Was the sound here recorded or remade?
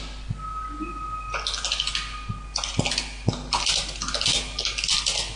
recorded